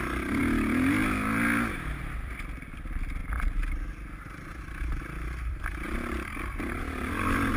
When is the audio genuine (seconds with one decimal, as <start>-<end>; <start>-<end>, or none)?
0.4-2.0; 3.2-5.0; 5.7-6.8